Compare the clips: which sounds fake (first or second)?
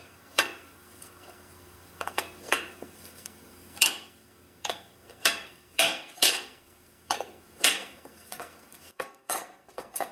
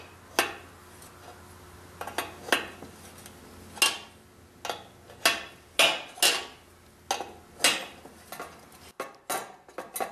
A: first